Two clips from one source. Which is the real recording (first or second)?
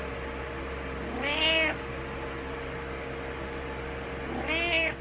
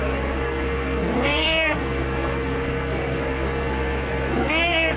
first